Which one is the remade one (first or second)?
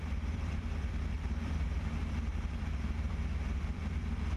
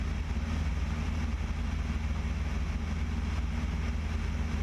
first